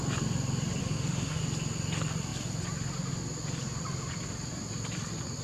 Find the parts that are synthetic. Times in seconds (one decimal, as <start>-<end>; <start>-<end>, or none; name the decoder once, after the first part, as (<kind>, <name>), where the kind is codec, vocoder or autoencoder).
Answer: 0.8-1.4 (autoencoder, DAC-VAE)